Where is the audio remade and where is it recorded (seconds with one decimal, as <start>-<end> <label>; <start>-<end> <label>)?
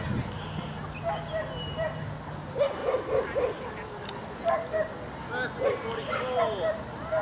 0.0-7.2 recorded